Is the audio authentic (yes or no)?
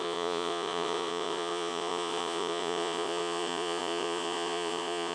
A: no